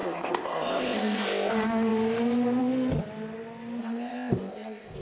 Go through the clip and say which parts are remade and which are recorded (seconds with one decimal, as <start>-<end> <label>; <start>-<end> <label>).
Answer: 0.0-1.5 remade; 1.5-3.8 recorded; 3.8-5.0 remade

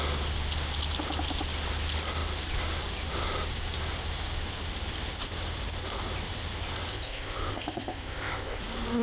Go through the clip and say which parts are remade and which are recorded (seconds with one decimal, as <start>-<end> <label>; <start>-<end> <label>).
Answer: 0.0-6.9 recorded; 6.9-8.6 remade; 8.6-9.0 recorded

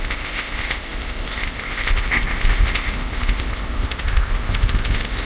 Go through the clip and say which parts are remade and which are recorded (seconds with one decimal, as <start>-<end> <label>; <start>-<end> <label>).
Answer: 0.0-5.2 remade

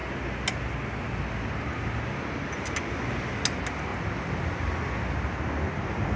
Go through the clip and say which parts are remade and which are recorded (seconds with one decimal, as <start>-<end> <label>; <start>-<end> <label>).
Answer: 0.0-6.2 recorded

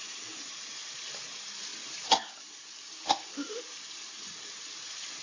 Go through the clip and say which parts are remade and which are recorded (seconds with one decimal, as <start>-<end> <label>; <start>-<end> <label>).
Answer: 0.0-5.2 recorded

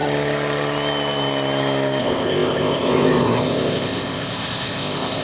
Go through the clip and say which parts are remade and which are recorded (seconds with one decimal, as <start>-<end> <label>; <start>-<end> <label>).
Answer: 0.0-2.0 recorded; 2.0-5.2 remade

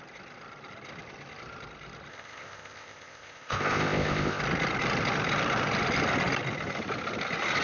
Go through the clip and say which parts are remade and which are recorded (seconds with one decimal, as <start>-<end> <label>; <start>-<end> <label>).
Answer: 0.0-2.1 recorded; 2.1-4.4 remade; 4.4-7.6 recorded